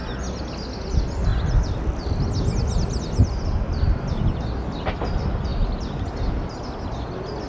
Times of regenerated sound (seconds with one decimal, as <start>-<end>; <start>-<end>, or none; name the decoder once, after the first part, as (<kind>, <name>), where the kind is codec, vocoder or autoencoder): none